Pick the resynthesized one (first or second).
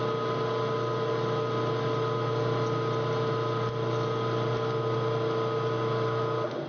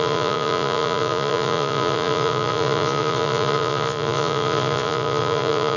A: second